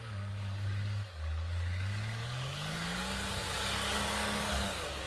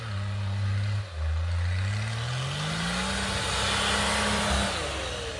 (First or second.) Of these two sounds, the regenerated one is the first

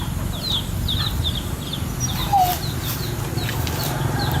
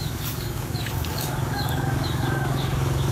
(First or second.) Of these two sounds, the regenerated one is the second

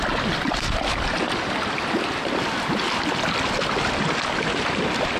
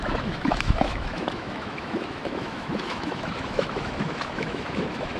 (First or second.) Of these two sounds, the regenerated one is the second